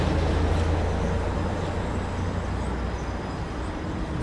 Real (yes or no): yes